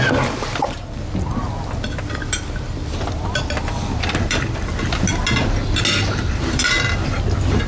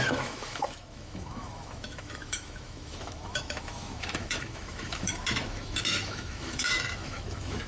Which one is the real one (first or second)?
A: first